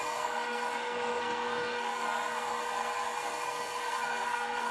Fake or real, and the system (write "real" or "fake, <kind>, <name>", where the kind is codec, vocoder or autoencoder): fake, codec, SNAC